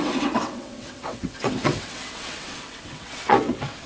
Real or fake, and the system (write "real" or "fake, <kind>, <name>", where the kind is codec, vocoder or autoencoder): fake, vocoder, WaveNeXt